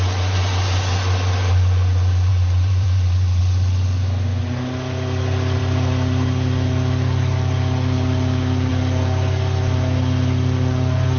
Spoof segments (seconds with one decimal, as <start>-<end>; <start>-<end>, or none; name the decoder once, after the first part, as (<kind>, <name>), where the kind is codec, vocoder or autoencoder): 2.3-3.4 (vocoder, BigVGAN v2)